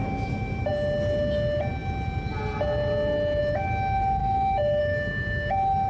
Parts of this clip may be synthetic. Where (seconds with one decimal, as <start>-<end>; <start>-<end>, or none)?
0.0-0.7; 4.2-4.8